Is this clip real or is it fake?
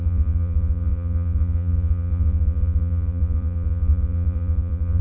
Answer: fake